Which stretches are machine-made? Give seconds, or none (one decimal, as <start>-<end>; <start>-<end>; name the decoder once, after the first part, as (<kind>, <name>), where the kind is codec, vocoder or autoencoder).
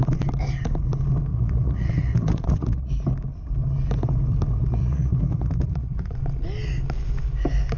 1.3-2.9 (vocoder, Vocos); 4.6-6.1